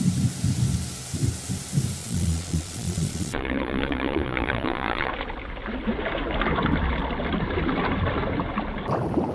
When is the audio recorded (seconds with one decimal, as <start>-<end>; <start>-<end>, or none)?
0.0-2.0; 5.1-9.3